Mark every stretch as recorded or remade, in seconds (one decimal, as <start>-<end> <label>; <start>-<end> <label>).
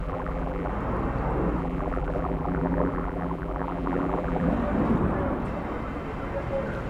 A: 0.0-0.7 remade; 0.7-1.6 recorded; 1.6-4.5 remade; 4.5-6.9 recorded